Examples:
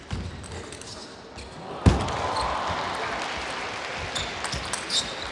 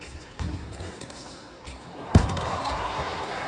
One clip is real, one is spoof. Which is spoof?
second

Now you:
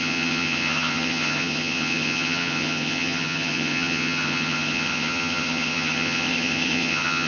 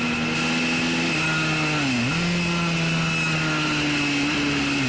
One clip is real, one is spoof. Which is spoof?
first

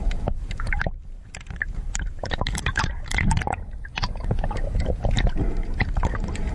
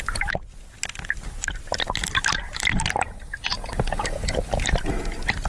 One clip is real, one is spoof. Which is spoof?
first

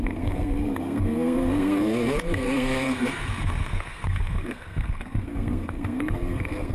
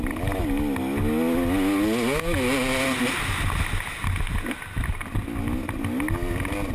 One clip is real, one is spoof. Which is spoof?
first